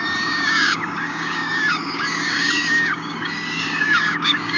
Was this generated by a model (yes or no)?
yes